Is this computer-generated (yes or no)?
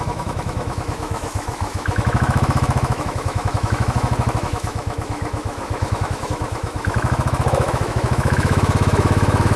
yes